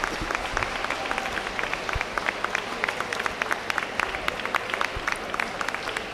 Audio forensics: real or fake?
real